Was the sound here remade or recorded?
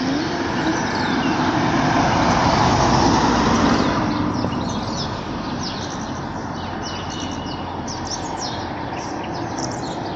recorded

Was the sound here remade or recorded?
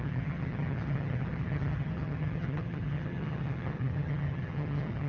remade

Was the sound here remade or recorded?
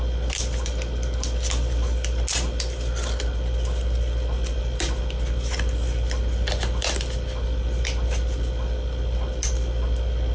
recorded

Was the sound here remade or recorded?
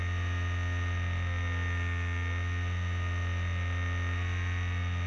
recorded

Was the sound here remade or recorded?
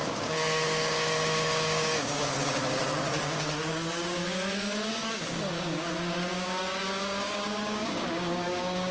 remade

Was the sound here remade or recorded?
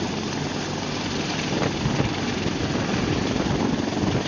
recorded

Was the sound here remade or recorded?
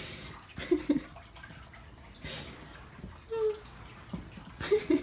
recorded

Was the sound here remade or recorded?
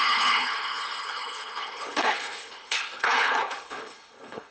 remade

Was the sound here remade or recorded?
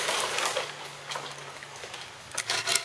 remade